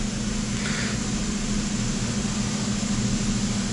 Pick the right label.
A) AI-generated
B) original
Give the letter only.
B